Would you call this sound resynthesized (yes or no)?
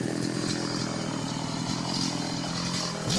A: no